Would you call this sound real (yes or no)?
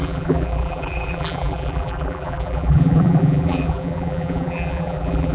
no